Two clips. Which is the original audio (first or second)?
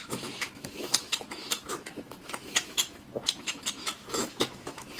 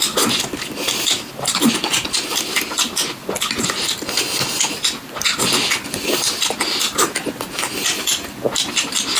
second